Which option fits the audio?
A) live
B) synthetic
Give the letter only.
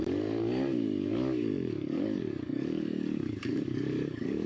B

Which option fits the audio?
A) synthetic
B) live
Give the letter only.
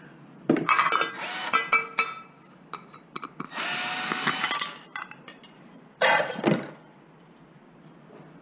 B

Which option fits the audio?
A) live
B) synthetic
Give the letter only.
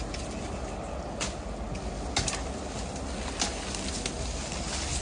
A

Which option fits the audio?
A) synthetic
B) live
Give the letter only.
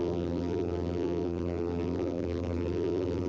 A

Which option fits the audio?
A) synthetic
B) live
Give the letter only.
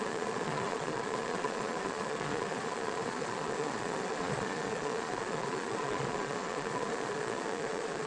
A